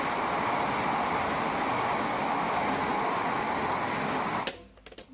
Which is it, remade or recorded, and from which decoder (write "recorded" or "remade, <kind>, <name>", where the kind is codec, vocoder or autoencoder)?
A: recorded